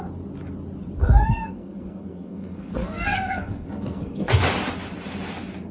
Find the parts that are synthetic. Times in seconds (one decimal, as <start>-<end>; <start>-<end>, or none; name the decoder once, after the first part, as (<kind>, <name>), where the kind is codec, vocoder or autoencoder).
1.0-4.4 (codec, SNAC)